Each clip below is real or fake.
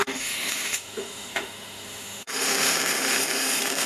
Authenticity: fake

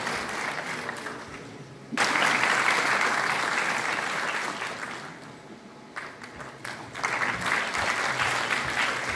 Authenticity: real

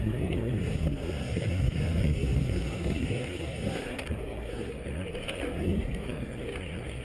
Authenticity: fake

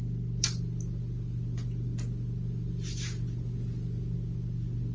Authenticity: real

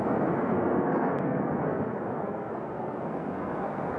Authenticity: fake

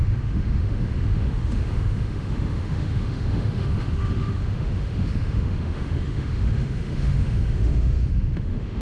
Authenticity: fake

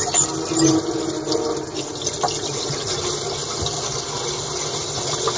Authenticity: real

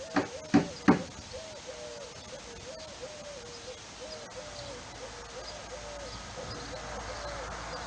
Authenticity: real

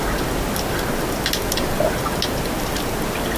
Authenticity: real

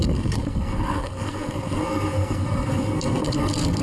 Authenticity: fake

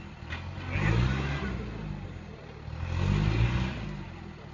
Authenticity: real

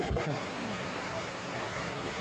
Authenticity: fake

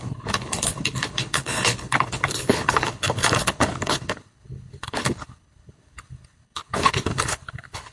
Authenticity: fake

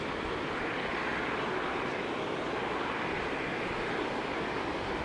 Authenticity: real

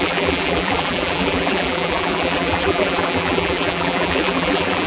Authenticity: fake